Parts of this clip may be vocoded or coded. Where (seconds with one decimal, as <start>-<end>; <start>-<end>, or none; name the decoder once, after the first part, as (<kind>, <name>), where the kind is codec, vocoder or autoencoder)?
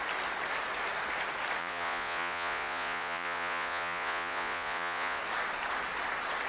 1.6-5.2 (vocoder, Vocos)